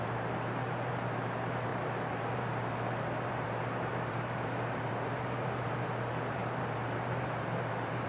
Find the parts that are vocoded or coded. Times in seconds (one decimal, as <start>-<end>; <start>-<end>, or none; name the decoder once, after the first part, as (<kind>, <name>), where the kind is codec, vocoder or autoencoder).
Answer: 0.0-8.1 (vocoder, BigVGAN v2)